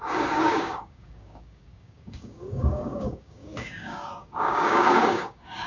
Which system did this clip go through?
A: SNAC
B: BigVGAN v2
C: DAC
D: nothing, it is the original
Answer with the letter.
C